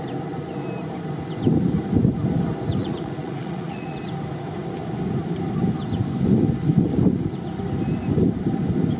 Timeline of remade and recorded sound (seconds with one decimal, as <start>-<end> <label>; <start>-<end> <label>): 0.0-2.8 recorded; 2.8-4.0 remade; 4.0-9.0 recorded